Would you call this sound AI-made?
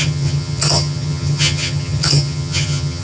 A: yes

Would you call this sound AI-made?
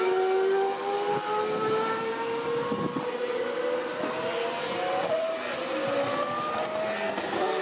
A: no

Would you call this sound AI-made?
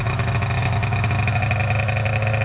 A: no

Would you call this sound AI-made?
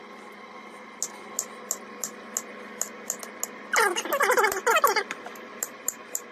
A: no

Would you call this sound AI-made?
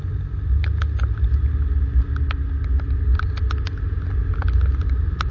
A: no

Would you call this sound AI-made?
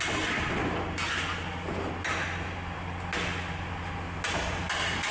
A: no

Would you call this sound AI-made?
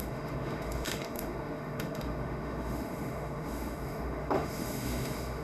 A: yes